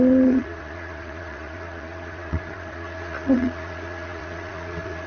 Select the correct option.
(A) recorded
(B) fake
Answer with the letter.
B